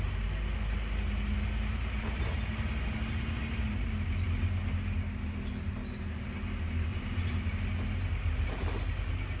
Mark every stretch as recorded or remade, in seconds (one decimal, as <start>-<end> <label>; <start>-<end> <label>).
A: 0.0-6.9 recorded; 6.9-7.4 remade; 7.4-9.4 recorded